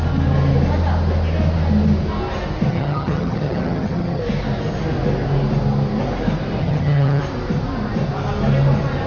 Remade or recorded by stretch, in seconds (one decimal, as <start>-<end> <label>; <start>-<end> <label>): 0.0-2.7 recorded; 2.7-4.2 remade; 4.2-6.6 recorded; 6.6-7.2 remade; 7.2-9.1 recorded